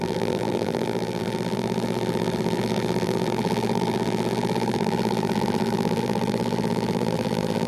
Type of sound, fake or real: fake